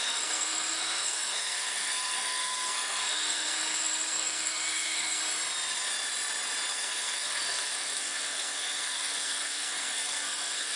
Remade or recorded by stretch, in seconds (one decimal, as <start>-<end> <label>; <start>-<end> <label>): 0.0-5.2 remade; 5.2-6.7 recorded; 6.7-10.8 remade